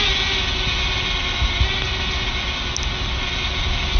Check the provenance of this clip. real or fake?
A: real